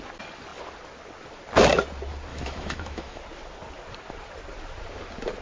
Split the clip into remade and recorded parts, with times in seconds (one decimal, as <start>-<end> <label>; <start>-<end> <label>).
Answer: 0.0-2.3 recorded; 2.3-3.2 remade; 3.2-5.4 recorded